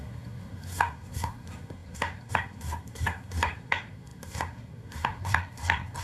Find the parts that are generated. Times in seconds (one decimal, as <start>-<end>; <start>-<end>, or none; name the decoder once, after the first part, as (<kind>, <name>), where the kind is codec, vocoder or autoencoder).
0.0-6.0 (codec, SNAC)